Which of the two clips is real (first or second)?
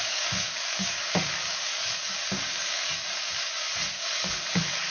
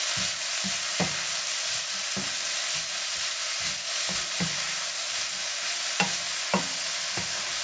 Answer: second